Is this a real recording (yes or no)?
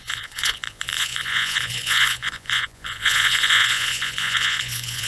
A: no